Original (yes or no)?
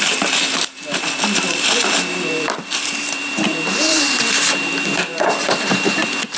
no